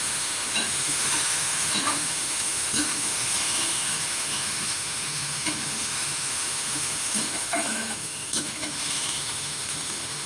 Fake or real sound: fake